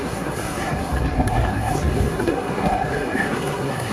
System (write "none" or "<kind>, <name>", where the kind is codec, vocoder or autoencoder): codec, SNAC